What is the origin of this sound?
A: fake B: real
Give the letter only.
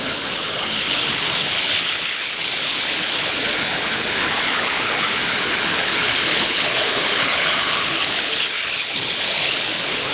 A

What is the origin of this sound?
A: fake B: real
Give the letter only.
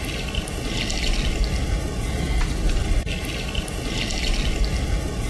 B